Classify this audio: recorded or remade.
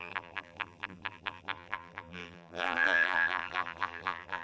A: remade